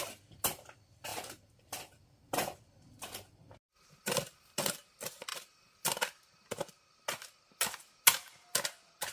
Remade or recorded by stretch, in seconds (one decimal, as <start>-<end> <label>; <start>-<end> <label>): 0.0-9.1 recorded